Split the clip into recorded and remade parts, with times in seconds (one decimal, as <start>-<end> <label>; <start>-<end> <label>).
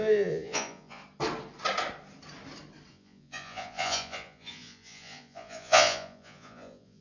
0.0-1.0 remade; 1.0-2.9 recorded; 2.9-7.0 remade